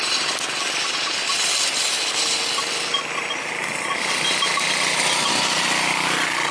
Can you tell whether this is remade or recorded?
recorded